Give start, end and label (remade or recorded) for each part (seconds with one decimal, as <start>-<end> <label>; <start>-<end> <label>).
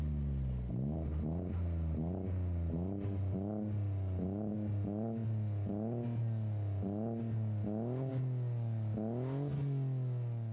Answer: 0.0-10.5 recorded